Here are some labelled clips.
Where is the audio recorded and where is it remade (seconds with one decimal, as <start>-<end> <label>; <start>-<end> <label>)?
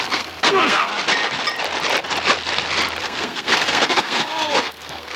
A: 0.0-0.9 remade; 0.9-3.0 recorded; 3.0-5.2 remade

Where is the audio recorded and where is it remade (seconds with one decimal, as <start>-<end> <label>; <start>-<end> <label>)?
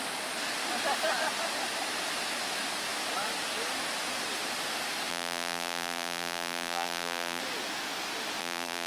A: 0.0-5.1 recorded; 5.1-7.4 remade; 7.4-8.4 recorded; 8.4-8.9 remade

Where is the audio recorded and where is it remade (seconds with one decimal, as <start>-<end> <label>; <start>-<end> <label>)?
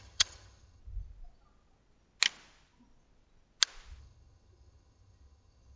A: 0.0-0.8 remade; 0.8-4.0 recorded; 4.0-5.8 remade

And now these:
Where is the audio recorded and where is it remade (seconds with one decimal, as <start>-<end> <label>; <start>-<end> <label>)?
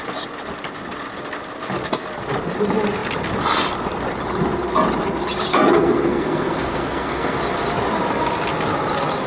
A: 0.0-5.5 recorded; 5.5-7.4 remade; 7.4-9.3 recorded